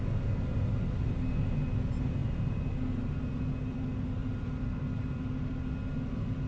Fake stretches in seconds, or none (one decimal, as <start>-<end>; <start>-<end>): 4.2-4.8